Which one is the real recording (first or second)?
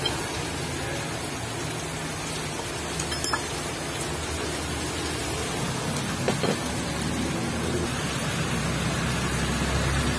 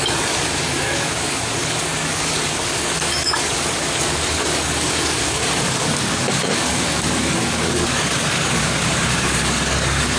first